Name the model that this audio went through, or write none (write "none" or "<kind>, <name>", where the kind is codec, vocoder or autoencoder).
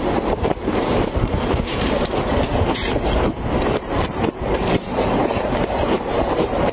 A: vocoder, BigVGAN v2